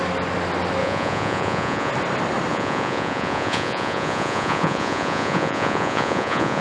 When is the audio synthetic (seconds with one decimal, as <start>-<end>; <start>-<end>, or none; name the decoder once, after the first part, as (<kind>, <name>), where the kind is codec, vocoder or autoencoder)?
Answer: 0.8-1.9 (vocoder, Vocos); 2.5-6.6